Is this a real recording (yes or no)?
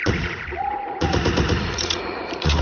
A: no